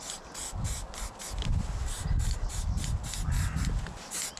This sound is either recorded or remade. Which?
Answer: recorded